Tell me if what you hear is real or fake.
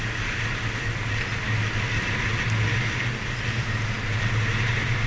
real